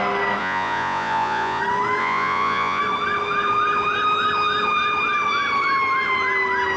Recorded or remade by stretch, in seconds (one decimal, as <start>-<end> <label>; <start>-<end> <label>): 0.0-0.4 recorded; 0.4-1.6 remade; 1.6-2.0 recorded; 2.0-2.8 remade; 2.8-6.8 recorded